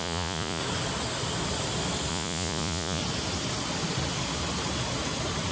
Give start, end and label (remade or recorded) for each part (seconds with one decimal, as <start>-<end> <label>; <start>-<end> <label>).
0.0-0.6 remade; 0.6-2.1 recorded; 2.1-3.0 remade; 3.0-5.5 recorded